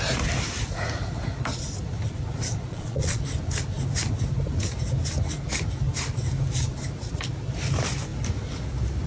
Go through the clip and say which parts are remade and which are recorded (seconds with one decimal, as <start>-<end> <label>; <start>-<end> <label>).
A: 0.0-2.7 recorded; 2.7-3.2 remade; 3.2-9.1 recorded